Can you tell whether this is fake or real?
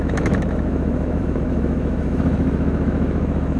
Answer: fake